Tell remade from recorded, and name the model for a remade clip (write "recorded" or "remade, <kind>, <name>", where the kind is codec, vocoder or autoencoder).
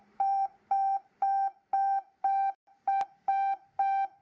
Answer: remade, vocoder, BigVGAN v2